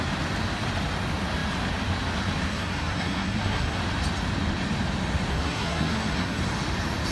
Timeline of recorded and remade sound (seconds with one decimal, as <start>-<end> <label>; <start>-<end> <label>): 0.0-2.5 recorded; 2.5-3.8 remade; 3.8-5.3 recorded; 5.3-6.4 remade; 6.4-7.1 recorded